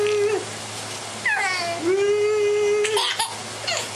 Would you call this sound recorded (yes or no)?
yes